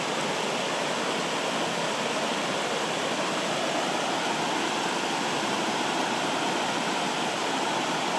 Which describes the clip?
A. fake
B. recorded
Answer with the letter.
B